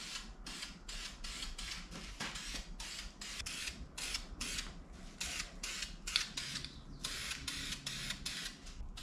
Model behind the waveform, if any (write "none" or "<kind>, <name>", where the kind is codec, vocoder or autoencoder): none